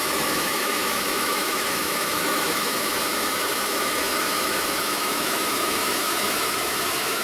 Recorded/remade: remade